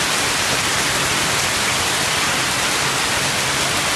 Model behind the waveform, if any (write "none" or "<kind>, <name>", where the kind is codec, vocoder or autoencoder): vocoder, BigVGAN v2